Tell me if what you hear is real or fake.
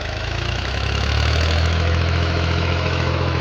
fake